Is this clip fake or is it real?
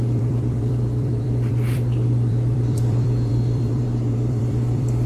fake